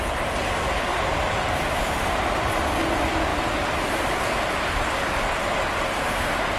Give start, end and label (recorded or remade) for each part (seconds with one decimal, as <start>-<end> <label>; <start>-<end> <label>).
0.0-0.9 recorded; 0.9-2.6 remade; 2.6-6.6 recorded